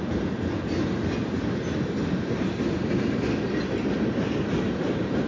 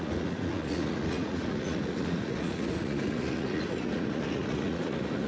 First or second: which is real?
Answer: first